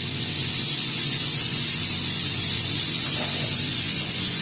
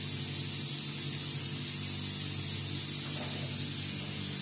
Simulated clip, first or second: first